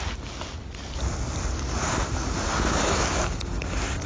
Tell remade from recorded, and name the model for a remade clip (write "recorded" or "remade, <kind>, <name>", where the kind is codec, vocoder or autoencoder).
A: recorded